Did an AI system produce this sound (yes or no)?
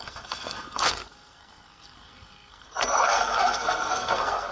yes